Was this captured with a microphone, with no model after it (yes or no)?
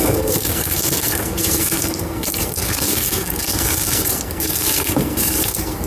no